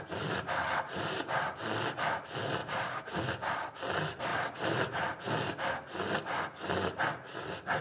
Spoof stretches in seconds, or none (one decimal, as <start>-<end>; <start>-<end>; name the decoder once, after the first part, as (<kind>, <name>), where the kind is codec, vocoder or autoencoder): 2.6-3.3 (vocoder, BigVGAN v2); 4.3-5.3